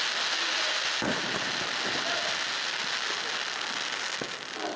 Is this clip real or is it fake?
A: real